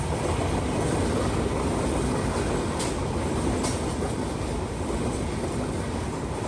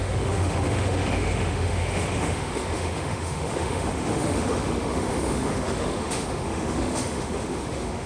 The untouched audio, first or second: first